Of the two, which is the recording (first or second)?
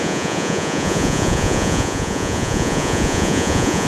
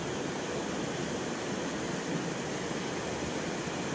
second